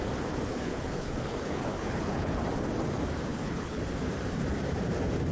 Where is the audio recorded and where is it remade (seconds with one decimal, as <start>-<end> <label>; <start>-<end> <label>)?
0.0-0.5 recorded; 0.5-2.4 remade; 2.4-3.3 recorded; 3.3-3.8 remade; 3.8-5.3 recorded